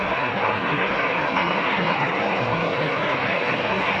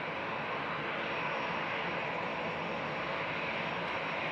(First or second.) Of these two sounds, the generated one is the first